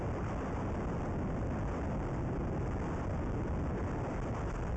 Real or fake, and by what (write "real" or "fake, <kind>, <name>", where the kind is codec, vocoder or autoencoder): real